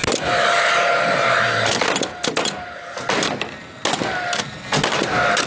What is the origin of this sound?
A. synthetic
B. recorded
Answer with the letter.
B